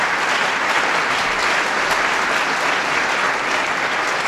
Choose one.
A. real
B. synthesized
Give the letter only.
A